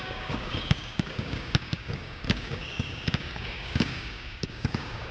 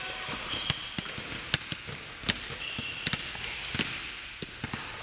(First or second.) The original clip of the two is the second